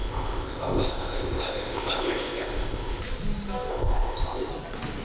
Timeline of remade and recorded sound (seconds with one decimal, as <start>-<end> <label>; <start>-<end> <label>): 0.0-3.0 remade; 3.0-3.7 recorded; 3.7-4.5 remade; 4.5-5.0 recorded